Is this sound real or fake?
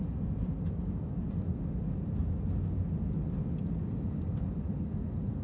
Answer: real